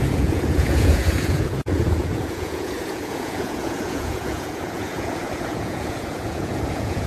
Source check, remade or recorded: remade